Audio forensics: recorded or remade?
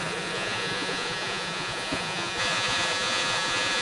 remade